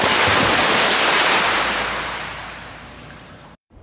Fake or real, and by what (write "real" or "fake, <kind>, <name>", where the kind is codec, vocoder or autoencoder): fake, vocoder, BigVGAN v2